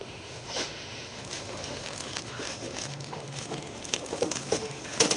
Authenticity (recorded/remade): remade